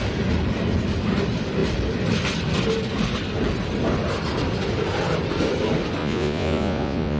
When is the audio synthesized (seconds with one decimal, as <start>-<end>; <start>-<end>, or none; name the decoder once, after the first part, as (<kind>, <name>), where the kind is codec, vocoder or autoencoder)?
6.0-7.2 (vocoder, Vocos)